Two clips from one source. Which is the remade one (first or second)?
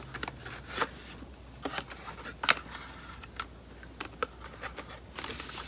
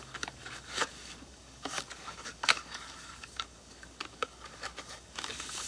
second